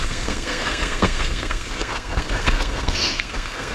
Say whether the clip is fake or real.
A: fake